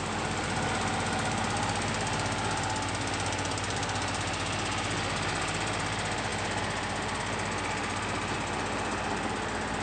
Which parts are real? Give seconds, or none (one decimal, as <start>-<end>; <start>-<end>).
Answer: 0.0-9.8